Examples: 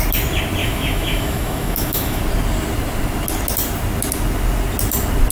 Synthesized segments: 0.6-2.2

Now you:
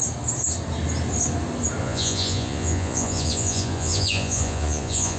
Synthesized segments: 1.8-5.2

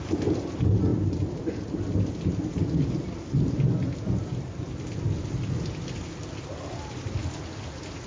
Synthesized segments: none